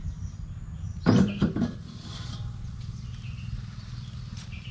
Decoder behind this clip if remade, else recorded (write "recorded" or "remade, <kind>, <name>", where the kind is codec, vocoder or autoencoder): recorded